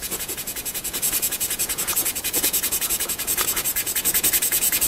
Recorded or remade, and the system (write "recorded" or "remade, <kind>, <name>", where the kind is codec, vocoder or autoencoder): remade, vocoder, Vocos